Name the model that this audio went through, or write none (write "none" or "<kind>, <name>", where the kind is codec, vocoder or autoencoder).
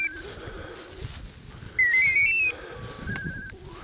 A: none